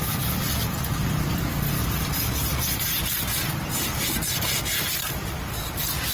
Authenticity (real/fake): real